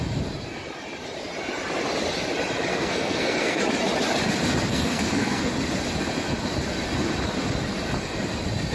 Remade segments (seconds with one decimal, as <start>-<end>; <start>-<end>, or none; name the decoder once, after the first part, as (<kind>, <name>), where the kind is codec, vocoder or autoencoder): 2.7-3.6 (codec, SNAC); 4.7-5.5